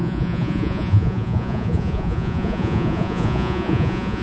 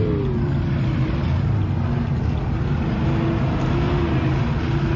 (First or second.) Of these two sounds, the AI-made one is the first